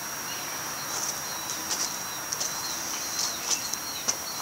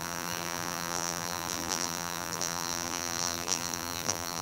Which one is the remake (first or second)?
second